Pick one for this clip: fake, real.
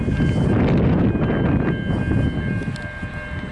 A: real